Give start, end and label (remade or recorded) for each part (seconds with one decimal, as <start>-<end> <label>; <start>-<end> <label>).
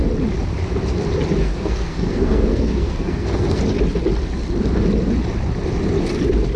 0.0-1.4 recorded; 1.4-3.6 remade; 3.6-6.6 recorded